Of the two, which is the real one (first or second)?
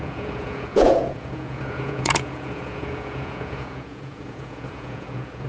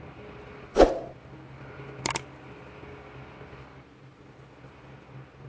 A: second